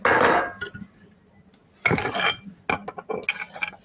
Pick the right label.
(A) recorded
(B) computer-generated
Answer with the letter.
A